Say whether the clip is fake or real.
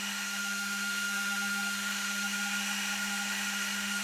fake